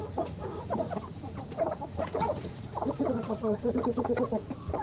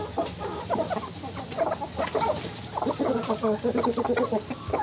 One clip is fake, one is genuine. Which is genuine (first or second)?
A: second